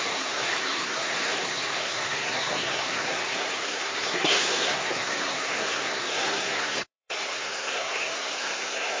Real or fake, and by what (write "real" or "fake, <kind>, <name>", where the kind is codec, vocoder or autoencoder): fake, codec, SNAC